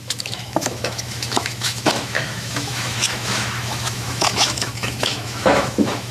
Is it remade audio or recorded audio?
remade